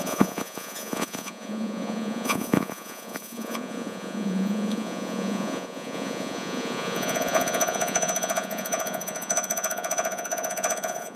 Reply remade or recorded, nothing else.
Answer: remade